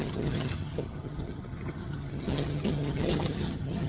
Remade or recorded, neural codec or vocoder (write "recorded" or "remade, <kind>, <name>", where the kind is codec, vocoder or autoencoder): remade, vocoder, HiFi-GAN